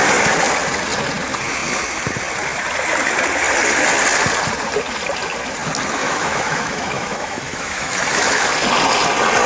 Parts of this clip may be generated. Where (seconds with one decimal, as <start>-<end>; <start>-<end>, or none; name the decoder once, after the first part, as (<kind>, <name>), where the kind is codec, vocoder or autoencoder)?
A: 6.0-8.5 (autoencoder, DAC-VAE)